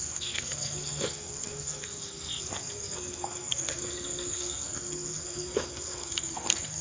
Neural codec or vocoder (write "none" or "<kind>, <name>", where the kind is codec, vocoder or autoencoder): codec, SNAC